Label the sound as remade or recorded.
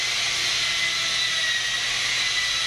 recorded